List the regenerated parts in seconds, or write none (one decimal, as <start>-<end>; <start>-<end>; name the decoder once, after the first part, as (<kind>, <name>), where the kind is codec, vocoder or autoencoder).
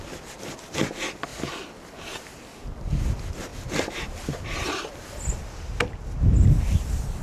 none